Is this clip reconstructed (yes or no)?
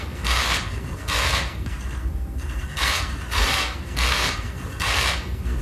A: yes